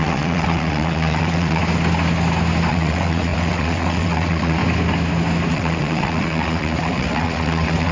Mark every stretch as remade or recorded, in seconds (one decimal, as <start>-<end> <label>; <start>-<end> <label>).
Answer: 0.0-1.6 remade; 1.6-2.7 recorded; 2.7-4.6 remade; 4.6-5.5 recorded; 5.5-7.9 remade